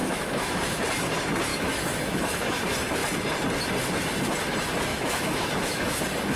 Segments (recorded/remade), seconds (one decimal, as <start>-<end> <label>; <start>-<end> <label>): 0.0-0.8 remade; 0.8-1.5 recorded; 1.5-2.6 remade; 2.6-4.9 recorded; 4.9-6.0 remade; 6.0-6.4 recorded